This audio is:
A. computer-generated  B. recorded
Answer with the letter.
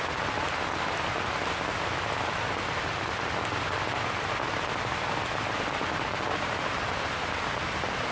B